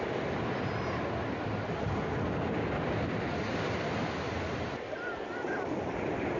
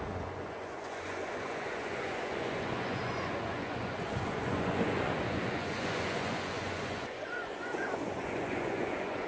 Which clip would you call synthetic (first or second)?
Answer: second